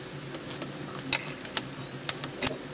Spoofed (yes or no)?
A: no